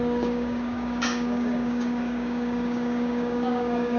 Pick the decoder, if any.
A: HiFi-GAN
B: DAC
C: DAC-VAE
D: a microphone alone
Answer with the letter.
B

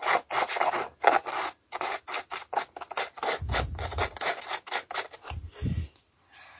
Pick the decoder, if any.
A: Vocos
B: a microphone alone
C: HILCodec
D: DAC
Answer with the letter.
B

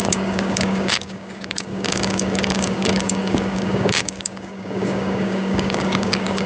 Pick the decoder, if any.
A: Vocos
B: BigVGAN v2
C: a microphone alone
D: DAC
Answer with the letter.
D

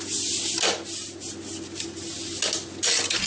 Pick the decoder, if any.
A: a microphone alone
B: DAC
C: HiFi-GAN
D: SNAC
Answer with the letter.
A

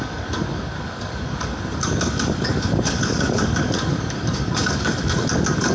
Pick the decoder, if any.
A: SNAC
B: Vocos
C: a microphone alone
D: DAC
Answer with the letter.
D